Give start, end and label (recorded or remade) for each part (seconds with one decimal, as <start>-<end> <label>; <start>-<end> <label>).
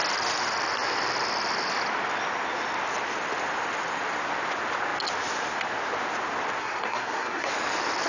0.0-6.6 recorded; 6.6-7.5 remade; 7.5-8.1 recorded